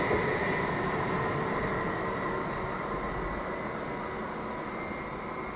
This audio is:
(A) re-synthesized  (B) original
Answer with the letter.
B